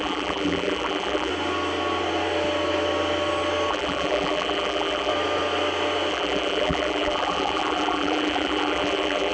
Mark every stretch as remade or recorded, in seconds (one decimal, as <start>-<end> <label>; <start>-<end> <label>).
0.0-1.3 remade; 1.3-3.7 recorded; 3.7-5.1 remade; 5.1-6.1 recorded; 6.1-9.3 remade